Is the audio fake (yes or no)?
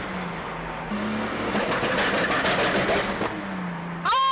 no